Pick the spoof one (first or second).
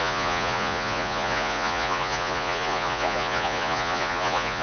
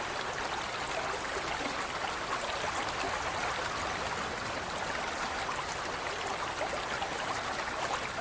first